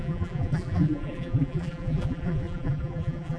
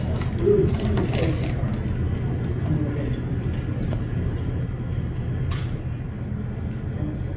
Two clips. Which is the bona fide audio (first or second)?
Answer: second